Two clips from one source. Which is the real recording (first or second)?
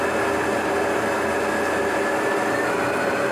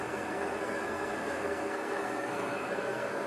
first